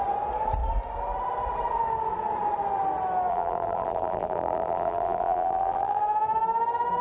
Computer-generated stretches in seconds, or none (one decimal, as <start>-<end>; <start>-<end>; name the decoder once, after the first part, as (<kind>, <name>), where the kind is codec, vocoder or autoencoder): 3.3-6.0 (vocoder, BigVGAN v2)